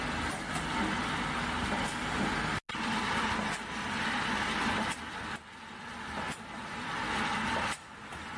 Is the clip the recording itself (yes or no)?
yes